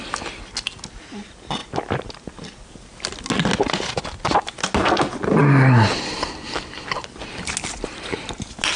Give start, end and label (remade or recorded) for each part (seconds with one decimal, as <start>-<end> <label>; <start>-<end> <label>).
0.0-8.8 recorded